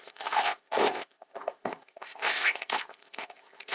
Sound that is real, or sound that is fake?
fake